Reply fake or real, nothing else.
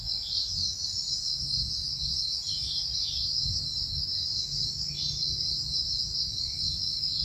real